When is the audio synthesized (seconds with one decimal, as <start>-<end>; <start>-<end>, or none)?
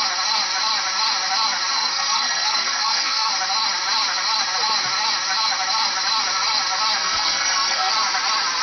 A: 1.7-3.3; 7.0-7.9